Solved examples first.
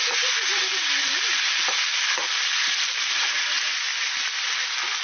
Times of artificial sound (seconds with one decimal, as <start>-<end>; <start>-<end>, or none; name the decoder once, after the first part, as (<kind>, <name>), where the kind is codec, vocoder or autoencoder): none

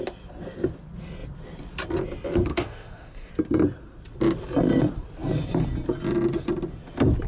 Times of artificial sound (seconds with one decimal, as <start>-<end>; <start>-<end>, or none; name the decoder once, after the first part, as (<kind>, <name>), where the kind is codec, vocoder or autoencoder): 2.5-3.3 (autoencoder, DAC-VAE)

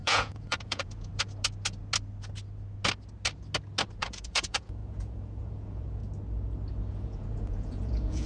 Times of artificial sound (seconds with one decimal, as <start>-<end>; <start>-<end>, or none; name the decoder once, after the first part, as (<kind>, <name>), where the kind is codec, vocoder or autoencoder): 0.0-1.1 (vocoder, Vocos); 4.0-6.0; 6.9-8.3